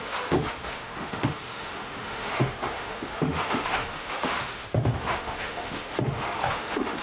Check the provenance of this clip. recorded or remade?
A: remade